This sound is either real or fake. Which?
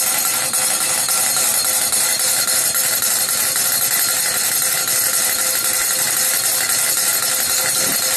real